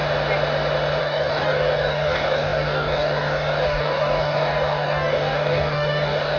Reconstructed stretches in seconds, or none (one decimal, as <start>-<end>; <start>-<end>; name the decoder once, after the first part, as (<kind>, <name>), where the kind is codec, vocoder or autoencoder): 1.0-6.4 (codec, DAC)